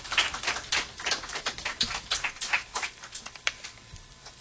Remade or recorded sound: recorded